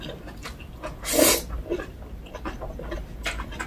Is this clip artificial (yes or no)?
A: no